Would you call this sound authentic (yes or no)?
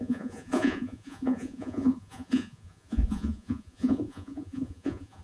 no